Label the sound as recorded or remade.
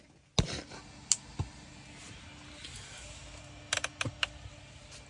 recorded